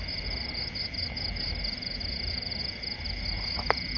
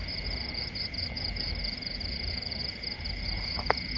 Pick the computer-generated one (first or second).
second